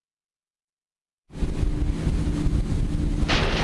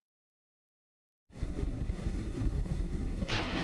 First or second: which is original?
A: first